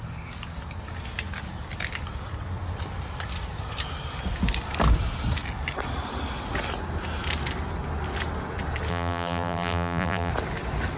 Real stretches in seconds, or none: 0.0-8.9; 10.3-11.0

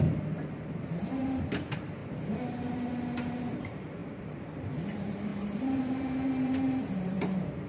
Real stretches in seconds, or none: 2.0-2.5; 2.9-3.4

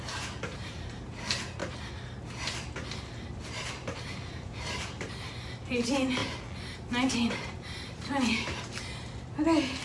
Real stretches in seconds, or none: 1.6-3.0; 6.2-7.3